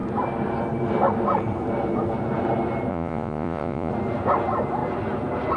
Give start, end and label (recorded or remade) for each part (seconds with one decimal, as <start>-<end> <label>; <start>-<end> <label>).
0.0-2.9 recorded; 2.9-3.9 remade; 3.9-5.6 recorded

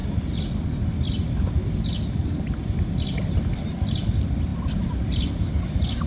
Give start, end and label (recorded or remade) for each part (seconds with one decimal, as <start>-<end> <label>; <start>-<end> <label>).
0.0-4.5 recorded; 4.5-5.3 remade; 5.3-6.1 recorded